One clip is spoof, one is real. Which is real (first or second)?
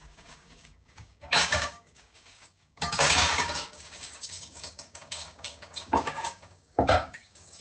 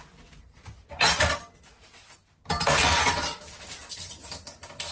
second